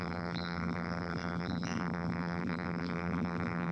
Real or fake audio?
fake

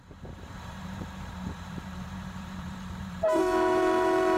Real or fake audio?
fake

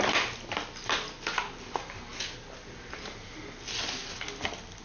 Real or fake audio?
real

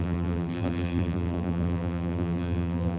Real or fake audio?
fake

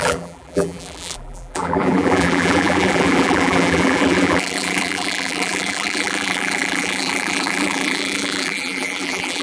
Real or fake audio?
fake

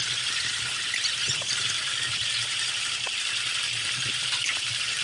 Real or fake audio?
fake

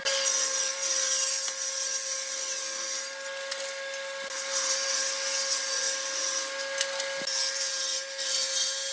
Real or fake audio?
real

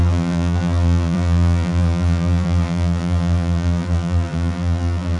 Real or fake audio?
fake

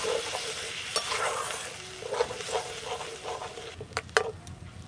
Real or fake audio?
real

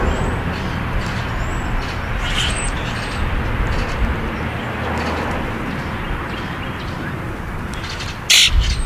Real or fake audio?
real